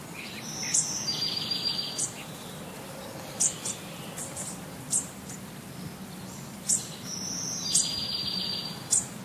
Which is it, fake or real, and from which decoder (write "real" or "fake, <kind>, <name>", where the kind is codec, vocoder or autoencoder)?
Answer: fake, vocoder, BigVGAN v2